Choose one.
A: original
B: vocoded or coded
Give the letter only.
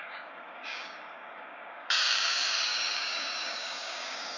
B